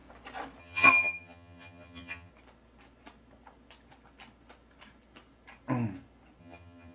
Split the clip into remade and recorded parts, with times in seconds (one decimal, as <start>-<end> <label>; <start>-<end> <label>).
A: 0.0-0.6 recorded; 0.6-2.3 remade; 2.3-6.4 recorded; 6.4-6.9 remade